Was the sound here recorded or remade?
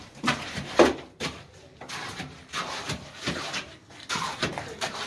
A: remade